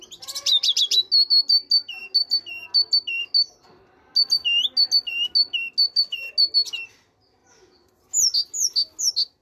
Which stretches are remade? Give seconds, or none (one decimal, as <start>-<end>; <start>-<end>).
none